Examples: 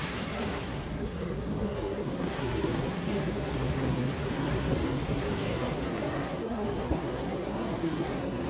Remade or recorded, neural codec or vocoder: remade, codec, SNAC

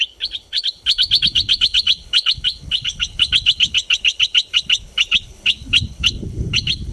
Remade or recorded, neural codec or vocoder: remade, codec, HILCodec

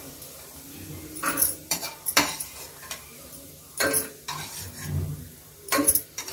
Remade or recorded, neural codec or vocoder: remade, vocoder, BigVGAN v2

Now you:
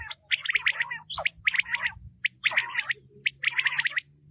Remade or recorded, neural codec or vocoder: recorded